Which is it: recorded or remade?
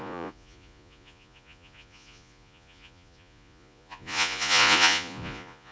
remade